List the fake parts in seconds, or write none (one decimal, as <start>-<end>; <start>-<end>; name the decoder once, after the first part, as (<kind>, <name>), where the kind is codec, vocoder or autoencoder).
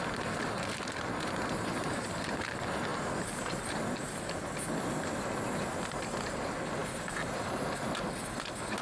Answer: none